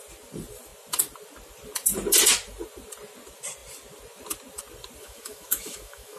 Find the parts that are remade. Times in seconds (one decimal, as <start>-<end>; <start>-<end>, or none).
5.0-6.2